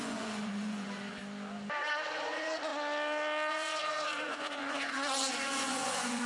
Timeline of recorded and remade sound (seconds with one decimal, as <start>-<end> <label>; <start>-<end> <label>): 0.0-1.2 remade; 1.2-1.9 recorded; 1.9-2.7 remade; 2.7-3.5 recorded; 3.5-6.3 remade